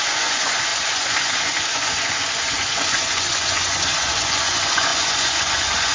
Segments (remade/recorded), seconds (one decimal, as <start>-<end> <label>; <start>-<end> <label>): 0.0-5.9 remade